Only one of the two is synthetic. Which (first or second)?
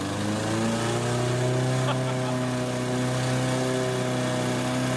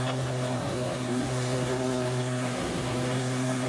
second